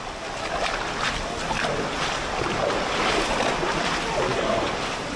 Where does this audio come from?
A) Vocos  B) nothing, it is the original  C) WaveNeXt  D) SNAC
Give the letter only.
B